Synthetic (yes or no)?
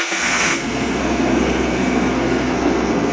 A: yes